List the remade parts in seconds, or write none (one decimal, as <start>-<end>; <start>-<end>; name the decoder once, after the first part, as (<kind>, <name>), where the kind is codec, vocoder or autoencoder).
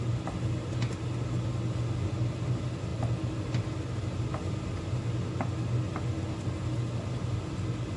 none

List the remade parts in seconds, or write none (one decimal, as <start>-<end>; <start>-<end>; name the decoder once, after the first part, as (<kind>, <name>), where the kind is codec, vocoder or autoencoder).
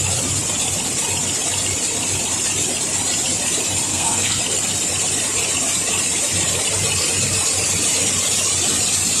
3.9-4.4 (codec, SNAC)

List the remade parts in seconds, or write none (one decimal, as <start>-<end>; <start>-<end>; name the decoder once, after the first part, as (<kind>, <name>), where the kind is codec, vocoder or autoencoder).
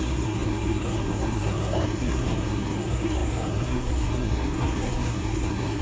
0.0-5.8 (codec, SNAC)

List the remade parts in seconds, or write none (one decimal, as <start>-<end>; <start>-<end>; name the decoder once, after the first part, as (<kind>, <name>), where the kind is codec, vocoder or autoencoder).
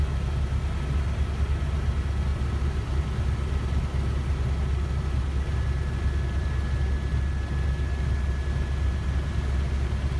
none